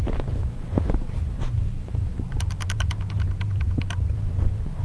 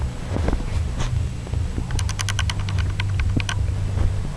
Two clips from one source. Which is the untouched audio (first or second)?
second